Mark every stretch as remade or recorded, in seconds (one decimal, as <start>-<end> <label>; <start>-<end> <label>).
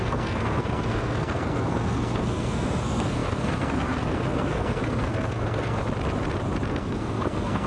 0.0-5.8 remade; 5.8-6.7 recorded; 6.7-7.7 remade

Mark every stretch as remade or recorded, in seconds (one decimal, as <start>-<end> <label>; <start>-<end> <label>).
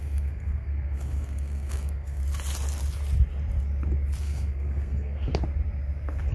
0.0-2.2 remade; 2.2-4.2 recorded; 4.2-5.3 remade; 5.3-6.3 recorded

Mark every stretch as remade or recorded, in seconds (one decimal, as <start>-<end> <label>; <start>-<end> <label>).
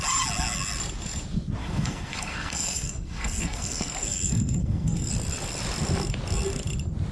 0.0-1.6 recorded; 1.6-5.1 remade; 5.1-7.1 recorded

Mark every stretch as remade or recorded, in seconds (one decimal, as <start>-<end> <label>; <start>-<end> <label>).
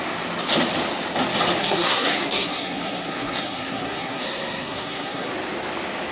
0.0-1.6 recorded; 1.6-5.3 remade; 5.3-6.1 recorded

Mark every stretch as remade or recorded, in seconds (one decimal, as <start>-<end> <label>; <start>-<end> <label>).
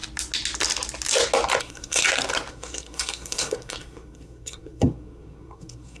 0.0-1.6 recorded; 1.6-2.0 remade; 2.0-2.5 recorded; 2.5-6.0 remade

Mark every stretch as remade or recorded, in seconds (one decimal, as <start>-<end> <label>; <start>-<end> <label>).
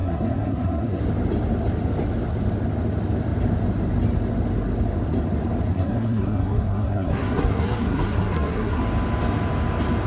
0.0-1.0 remade; 1.0-5.7 recorded; 5.7-8.8 remade; 8.8-10.1 recorded